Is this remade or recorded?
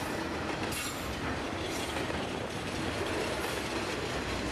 recorded